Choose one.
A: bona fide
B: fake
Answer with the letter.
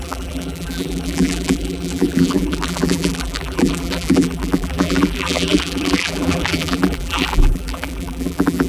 B